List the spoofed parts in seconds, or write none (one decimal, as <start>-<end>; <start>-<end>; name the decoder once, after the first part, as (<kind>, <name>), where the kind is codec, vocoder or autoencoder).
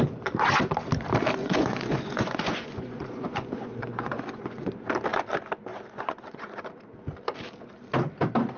1.4-4.7 (vocoder, Vocos); 5.7-6.6